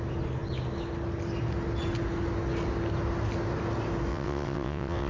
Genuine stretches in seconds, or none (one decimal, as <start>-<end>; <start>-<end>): 0.0-4.1